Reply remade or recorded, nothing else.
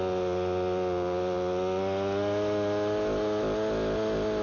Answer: recorded